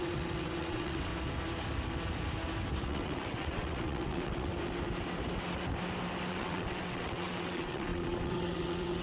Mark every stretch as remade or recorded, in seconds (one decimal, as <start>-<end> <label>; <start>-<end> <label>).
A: 0.0-1.1 remade; 1.1-2.8 recorded; 2.8-4.5 remade; 4.5-6.3 recorded; 6.3-9.0 remade